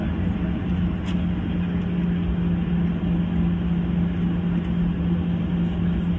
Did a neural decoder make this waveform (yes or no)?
no